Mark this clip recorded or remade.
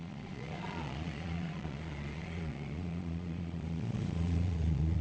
remade